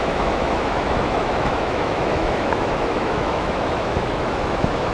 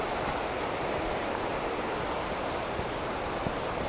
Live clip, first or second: second